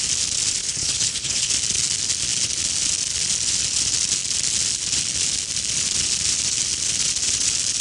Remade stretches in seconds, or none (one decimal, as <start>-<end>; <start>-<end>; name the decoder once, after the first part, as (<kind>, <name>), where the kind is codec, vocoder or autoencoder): 0.6-1.5 (codec, HILCodec)